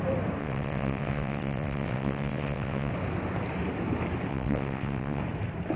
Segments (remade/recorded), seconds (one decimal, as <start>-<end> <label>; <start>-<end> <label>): 0.0-0.4 recorded; 0.4-2.9 remade; 2.9-4.3 recorded; 4.3-5.2 remade; 5.2-5.8 recorded